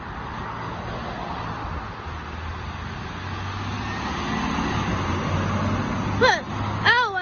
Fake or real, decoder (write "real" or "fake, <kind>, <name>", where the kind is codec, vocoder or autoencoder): real